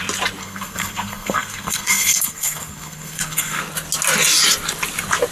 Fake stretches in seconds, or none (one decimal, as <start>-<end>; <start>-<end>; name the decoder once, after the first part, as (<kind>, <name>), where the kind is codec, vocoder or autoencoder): 0.4-3.6 (codec, SNAC)